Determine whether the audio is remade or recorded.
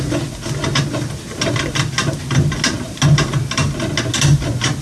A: recorded